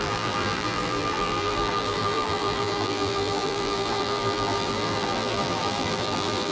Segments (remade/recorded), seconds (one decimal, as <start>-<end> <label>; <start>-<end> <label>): 0.0-6.5 remade

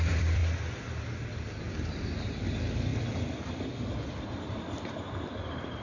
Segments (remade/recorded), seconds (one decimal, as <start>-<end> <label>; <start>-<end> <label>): 0.0-0.4 remade; 0.4-1.6 recorded; 1.6-5.8 remade

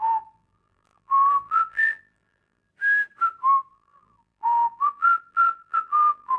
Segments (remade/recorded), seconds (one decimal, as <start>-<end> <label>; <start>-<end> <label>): 0.0-2.7 remade; 2.7-3.7 recorded; 3.7-6.4 remade

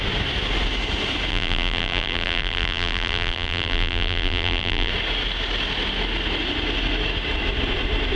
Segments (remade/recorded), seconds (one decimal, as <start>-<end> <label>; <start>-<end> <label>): 0.0-1.3 recorded; 1.3-4.9 remade; 4.9-8.2 recorded

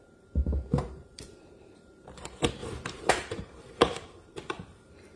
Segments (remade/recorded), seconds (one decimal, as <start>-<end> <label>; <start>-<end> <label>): 0.0-2.6 remade; 2.6-3.1 recorded; 3.1-5.2 remade